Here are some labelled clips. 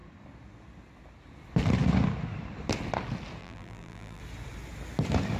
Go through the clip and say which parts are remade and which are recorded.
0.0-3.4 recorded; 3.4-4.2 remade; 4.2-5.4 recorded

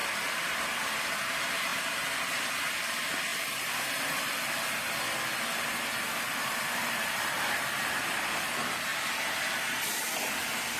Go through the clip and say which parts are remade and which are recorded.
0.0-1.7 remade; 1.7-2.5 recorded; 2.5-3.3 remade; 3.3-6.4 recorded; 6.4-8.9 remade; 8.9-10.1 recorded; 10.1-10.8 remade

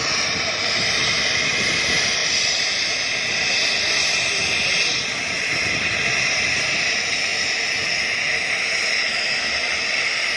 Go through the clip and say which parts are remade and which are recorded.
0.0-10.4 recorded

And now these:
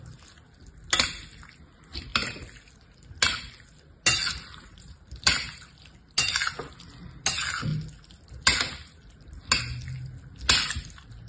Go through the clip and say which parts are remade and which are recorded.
0.0-4.3 recorded; 4.3-5.8 remade; 5.8-11.3 recorded

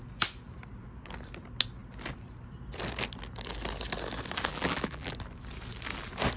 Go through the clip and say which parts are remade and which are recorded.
0.0-4.5 recorded; 4.5-5.1 remade; 5.1-6.4 recorded